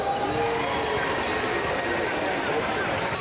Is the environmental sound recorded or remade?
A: recorded